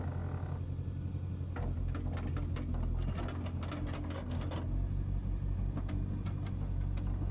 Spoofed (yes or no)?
no